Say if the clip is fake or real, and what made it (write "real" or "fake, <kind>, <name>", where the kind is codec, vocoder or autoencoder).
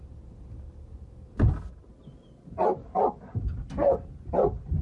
real